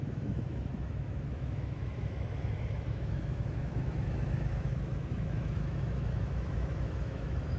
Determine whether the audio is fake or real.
fake